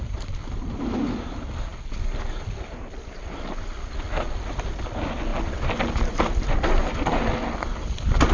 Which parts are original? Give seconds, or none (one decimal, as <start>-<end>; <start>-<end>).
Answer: 0.0-8.3